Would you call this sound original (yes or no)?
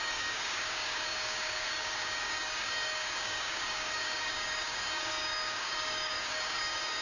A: no